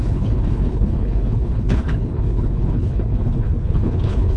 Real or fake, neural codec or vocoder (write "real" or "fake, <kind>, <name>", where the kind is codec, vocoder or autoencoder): fake, codec, HILCodec